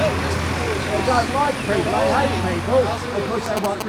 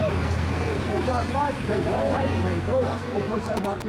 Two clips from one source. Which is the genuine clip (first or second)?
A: first